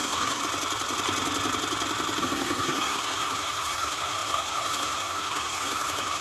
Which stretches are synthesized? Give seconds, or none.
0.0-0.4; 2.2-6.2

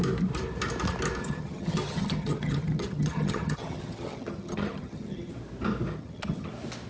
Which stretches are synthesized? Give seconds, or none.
1.2-5.3; 5.9-6.5

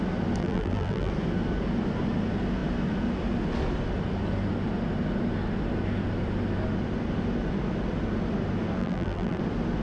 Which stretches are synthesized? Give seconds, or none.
0.4-1.1; 8.8-9.4